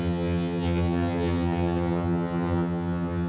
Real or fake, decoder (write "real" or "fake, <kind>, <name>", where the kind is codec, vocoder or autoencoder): fake, vocoder, HiFi-GAN